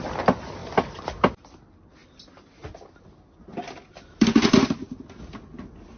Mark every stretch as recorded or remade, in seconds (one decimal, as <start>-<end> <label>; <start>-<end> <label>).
0.0-6.0 recorded